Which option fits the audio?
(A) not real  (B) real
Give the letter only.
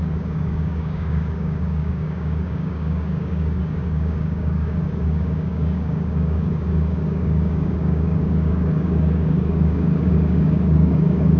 A